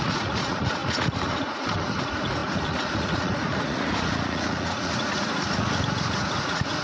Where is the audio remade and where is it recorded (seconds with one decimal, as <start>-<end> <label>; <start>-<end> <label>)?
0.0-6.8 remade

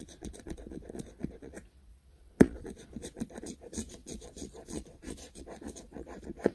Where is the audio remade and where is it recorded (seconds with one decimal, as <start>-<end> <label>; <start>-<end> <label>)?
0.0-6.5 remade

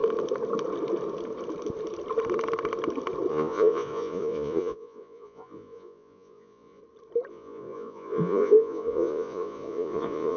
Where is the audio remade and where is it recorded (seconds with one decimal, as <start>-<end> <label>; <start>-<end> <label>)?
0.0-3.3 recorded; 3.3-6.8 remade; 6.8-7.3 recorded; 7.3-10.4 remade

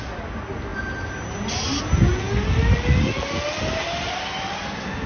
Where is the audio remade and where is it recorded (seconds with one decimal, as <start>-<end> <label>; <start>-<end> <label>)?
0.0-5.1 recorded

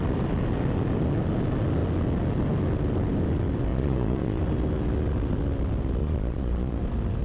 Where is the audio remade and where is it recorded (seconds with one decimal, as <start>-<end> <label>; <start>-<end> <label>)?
0.0-3.7 recorded; 3.7-4.4 remade; 4.4-6.0 recorded; 6.0-6.8 remade; 6.8-7.2 recorded

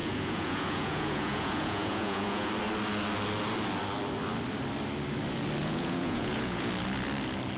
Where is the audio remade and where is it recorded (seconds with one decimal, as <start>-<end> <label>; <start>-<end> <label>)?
0.0-2.5 remade; 2.5-5.6 recorded; 5.6-6.7 remade; 6.7-7.6 recorded

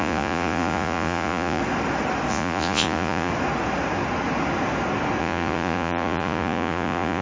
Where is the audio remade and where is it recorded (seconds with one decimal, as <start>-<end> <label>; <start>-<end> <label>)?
0.0-1.6 remade; 1.6-2.3 recorded; 2.3-3.3 remade; 3.3-5.2 recorded; 5.2-7.2 remade

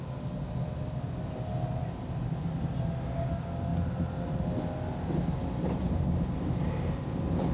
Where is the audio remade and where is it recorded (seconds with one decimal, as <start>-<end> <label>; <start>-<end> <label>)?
0.0-7.5 recorded